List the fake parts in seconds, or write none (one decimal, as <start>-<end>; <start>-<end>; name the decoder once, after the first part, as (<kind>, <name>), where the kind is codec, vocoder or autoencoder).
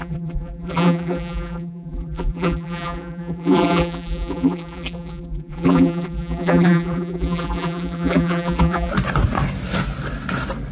0.0-8.9 (vocoder, BigVGAN v2)